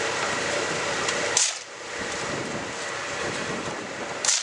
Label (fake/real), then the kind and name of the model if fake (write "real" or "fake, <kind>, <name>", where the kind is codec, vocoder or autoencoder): fake, vocoder, BigVGAN v2